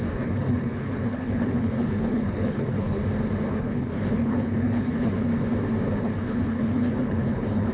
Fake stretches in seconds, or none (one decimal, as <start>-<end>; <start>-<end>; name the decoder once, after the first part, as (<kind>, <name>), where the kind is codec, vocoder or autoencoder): 0.0-3.0 (codec, HILCodec); 3.5-5.3; 6.0-7.7